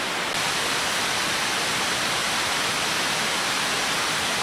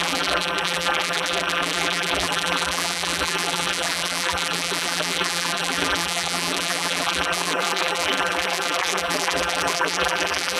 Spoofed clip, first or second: second